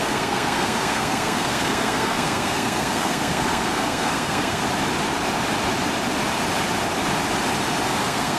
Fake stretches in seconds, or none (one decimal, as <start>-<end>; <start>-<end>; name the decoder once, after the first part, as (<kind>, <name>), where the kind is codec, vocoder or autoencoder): 0.0-4.6 (codec, SNAC); 8.0-8.4